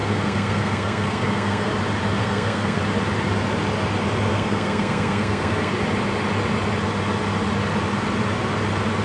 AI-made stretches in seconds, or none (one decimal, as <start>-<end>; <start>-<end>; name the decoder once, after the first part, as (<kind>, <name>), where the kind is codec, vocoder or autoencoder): 0.0-1.7 (codec, SNAC); 2.2-2.8; 4.3-5.7

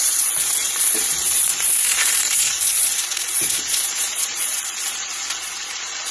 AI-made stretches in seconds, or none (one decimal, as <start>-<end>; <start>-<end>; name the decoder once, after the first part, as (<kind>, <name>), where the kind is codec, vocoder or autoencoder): 0.0-6.1 (vocoder, Vocos)

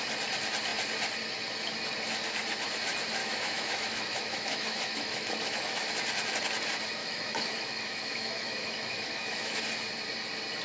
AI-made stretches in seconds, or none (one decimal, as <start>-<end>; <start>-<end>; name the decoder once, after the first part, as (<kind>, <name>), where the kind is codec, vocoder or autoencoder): 3.2-5.9 (autoencoder, DAC-VAE); 7.0-9.6

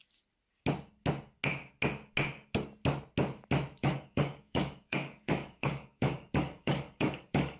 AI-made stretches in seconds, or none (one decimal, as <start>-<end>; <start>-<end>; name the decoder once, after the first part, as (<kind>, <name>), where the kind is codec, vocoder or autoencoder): 3.8-7.6 (codec, DAC)

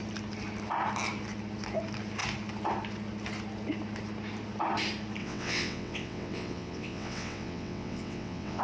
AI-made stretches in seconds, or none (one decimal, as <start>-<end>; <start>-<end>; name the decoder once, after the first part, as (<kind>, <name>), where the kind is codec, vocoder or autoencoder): 5.2-8.6 (vocoder, WaveNeXt)

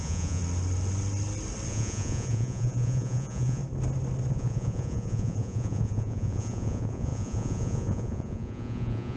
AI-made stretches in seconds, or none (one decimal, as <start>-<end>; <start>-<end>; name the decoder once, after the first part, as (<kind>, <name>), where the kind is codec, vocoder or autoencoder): 0.0-0.4 (vocoder, Vocos); 1.7-3.6; 4.3-9.2

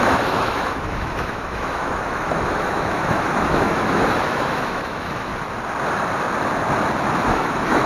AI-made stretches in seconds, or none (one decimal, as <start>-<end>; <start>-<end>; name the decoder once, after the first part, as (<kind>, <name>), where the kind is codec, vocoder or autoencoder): 0.0-5.3 (autoencoder, DAC-VAE); 7.3-7.9